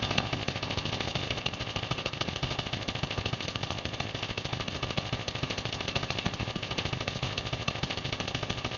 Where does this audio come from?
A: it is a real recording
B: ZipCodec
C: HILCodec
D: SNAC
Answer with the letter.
B